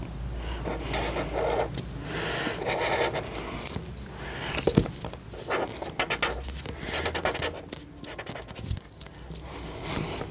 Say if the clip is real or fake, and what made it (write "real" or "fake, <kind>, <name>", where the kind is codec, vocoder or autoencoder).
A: real